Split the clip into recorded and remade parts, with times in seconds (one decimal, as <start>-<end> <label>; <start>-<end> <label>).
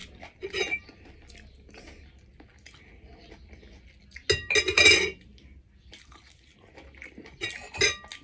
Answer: 0.0-0.8 remade; 0.8-8.2 recorded